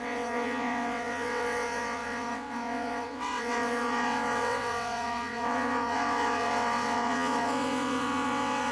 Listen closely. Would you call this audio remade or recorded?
remade